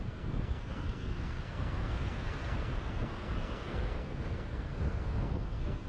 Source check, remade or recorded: remade